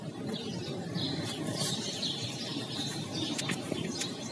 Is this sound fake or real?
fake